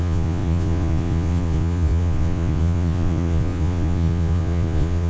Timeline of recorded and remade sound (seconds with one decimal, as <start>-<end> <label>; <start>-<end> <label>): 0.0-5.1 remade